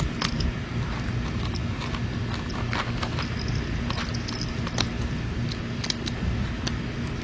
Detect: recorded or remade recorded